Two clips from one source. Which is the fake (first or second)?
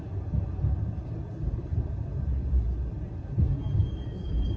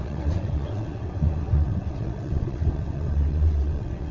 second